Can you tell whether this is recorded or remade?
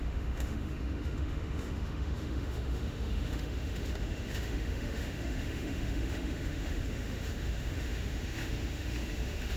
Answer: remade